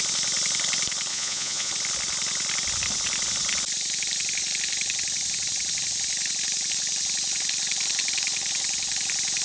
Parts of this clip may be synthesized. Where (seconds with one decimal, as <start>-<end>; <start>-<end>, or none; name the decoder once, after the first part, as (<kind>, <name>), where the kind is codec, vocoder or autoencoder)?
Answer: 1.1-1.7 (vocoder, Vocos)